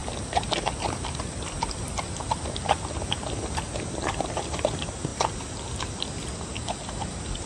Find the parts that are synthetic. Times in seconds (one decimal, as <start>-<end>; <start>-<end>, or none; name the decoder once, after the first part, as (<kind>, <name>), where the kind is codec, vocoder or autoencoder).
none